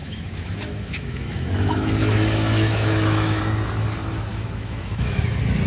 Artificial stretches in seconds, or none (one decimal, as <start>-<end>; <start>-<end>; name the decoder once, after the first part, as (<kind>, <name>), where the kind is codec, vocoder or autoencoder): 0.0-3.4 (autoencoder, DAC-VAE); 4.3-5.2